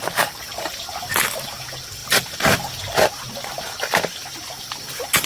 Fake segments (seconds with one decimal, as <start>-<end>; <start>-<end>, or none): none